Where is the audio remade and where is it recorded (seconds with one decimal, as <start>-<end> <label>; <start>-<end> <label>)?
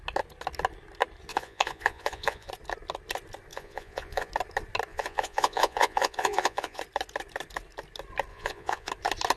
0.0-1.3 recorded; 1.3-2.5 remade; 2.5-3.5 recorded; 3.5-4.3 remade; 4.3-4.9 recorded; 4.9-6.8 remade; 6.8-8.3 recorded; 8.3-8.9 remade; 8.9-9.4 recorded